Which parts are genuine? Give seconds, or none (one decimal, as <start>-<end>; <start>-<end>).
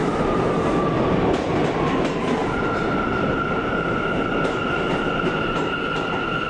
0.0-6.5